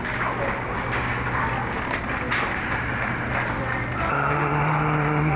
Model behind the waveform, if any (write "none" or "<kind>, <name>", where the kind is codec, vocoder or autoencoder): none